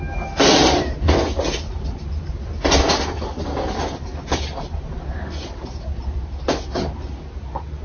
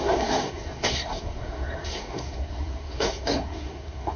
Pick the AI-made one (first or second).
second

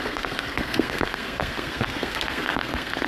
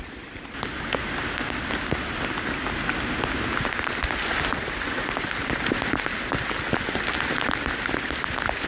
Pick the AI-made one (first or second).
first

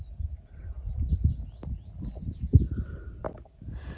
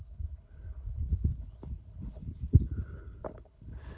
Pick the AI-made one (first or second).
second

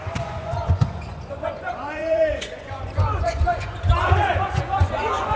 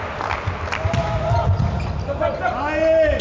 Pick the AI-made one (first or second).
first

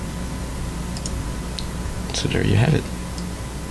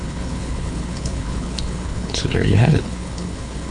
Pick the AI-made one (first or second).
second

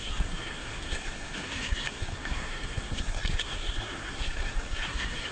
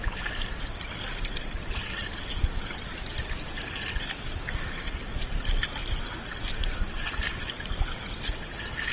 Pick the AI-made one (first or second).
first